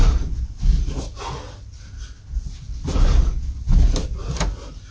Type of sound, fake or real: real